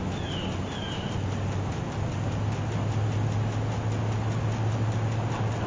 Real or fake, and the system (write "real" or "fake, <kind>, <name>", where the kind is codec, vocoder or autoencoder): real